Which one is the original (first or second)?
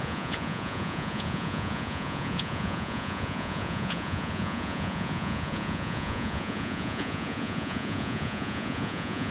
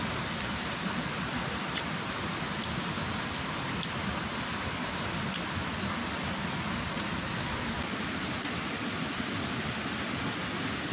second